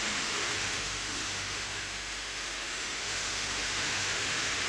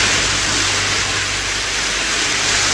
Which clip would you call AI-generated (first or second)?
first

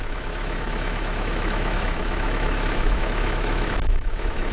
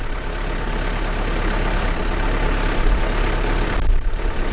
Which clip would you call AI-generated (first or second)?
first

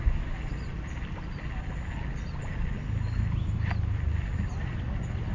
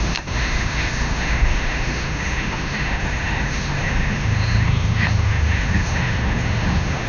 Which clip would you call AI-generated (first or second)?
second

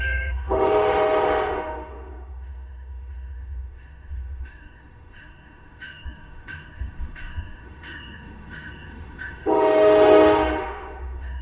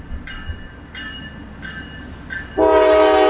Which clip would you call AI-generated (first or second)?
first